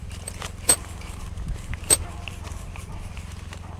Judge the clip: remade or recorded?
recorded